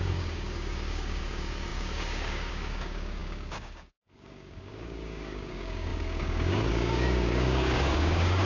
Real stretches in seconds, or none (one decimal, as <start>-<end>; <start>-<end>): none